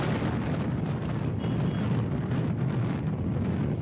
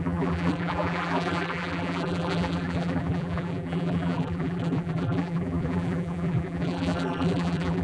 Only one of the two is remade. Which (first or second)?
second